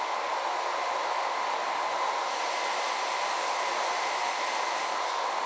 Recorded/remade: recorded